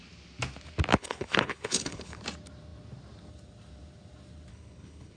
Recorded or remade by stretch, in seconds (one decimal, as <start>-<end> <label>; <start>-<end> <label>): 0.0-0.9 recorded; 0.9-2.2 remade; 2.2-4.5 recorded; 4.5-5.2 remade